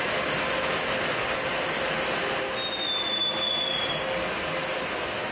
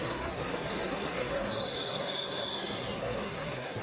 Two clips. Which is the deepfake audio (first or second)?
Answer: second